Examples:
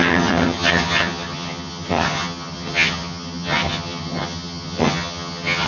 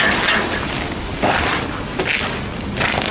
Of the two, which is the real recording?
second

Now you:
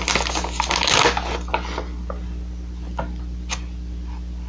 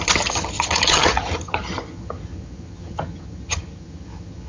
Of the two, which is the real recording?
first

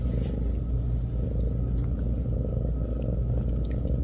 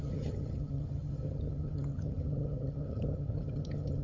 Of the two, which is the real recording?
first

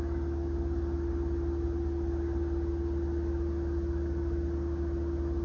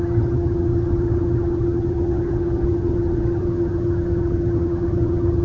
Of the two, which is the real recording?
first